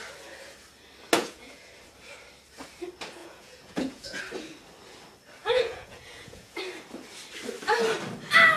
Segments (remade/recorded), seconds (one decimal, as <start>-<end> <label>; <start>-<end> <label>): 0.0-1.2 recorded; 1.2-1.7 remade; 1.7-3.2 recorded; 3.2-4.2 remade; 4.2-5.4 recorded; 5.4-6.6 remade; 6.6-8.6 recorded